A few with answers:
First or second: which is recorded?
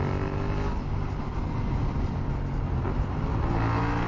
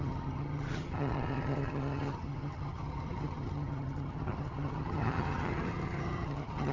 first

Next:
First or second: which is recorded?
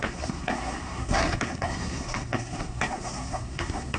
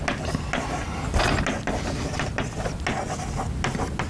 second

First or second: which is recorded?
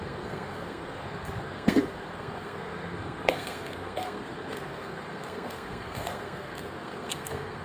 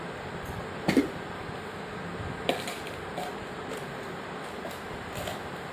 second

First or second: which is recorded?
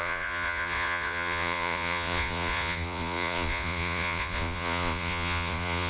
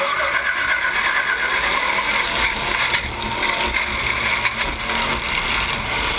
second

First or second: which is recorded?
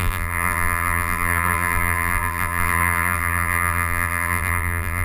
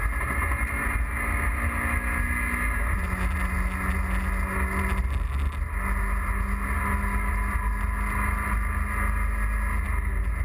second